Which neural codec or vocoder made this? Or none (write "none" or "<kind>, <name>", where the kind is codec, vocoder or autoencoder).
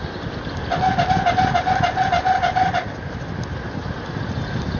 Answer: none